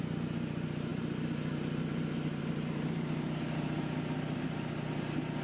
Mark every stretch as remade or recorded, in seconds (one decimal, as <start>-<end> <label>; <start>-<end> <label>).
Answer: 0.0-5.4 recorded